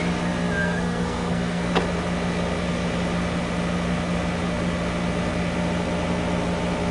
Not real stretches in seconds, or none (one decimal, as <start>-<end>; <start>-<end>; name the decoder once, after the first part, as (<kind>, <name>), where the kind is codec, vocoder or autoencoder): 0.6-1.7 (codec, SNAC)